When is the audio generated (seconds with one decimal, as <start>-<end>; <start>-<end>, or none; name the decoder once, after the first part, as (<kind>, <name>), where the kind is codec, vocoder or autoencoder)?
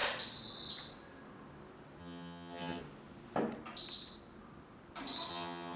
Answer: 2.0-2.8 (vocoder, HiFi-GAN); 5.3-5.8